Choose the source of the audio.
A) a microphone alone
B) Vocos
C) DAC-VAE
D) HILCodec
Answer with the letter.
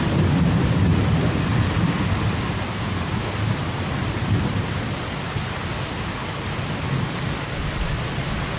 A